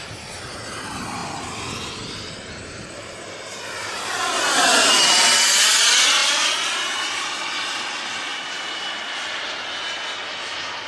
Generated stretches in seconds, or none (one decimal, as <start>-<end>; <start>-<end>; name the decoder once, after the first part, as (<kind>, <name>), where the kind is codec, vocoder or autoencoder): 8.3-8.9 (vocoder, BigVGAN v2)